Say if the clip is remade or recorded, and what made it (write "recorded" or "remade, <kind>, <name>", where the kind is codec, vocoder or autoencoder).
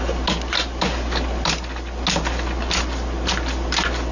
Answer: recorded